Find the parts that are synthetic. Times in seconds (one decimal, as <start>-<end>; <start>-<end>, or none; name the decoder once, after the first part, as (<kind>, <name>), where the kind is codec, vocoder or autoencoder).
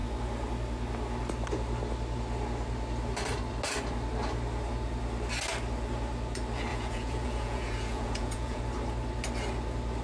6.7-8.6 (vocoder, Vocos)